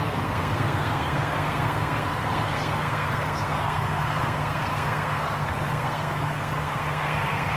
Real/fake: fake